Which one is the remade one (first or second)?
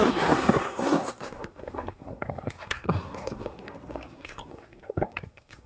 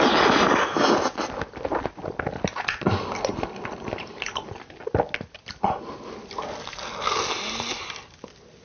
first